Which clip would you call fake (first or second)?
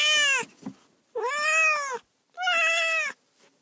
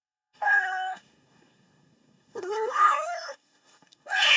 second